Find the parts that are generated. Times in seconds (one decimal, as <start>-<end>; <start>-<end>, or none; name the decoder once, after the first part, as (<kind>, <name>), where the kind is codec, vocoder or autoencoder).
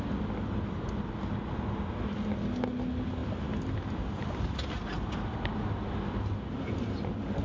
none